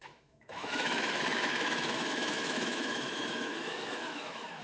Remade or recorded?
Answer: remade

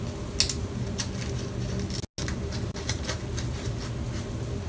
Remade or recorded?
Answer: recorded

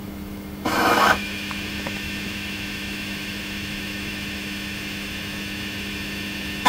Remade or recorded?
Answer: remade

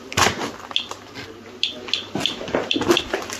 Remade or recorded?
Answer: recorded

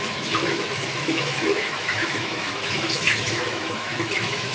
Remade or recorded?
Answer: remade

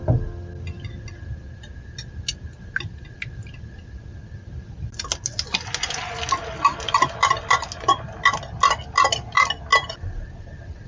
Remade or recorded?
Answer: recorded